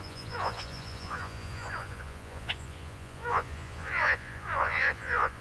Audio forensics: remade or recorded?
remade